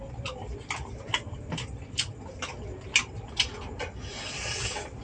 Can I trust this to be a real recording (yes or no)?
yes